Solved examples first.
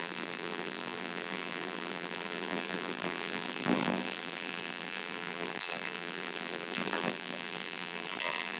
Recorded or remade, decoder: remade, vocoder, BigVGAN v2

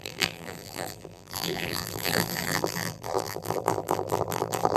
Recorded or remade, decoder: remade, vocoder, BigVGAN v2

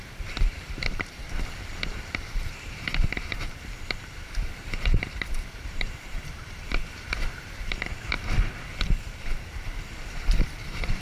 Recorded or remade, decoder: remade, vocoder, BigVGAN v2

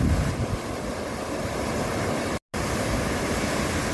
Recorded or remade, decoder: recorded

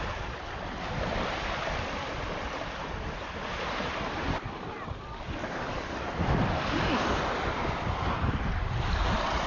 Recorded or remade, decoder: remade, vocoder, BigVGAN v2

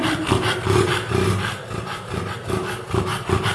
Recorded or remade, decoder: recorded